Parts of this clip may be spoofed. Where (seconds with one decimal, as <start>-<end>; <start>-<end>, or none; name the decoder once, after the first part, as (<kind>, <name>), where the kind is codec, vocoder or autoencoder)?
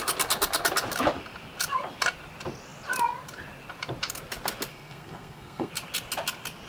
4.7-5.7 (codec, SNAC)